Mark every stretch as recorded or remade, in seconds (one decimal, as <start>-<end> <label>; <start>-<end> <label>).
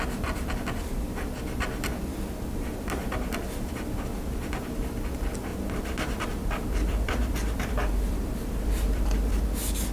0.0-5.5 recorded; 5.5-9.3 remade; 9.3-9.9 recorded